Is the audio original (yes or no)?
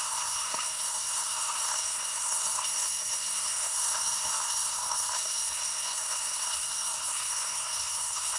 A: no